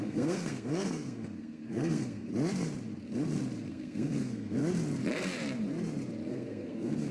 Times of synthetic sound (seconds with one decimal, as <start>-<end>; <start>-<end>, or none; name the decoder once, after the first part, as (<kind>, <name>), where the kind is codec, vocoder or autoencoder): 0.0-2.3 (codec, SNAC); 3.7-4.6; 6.3-7.1